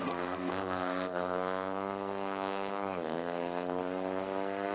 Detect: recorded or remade remade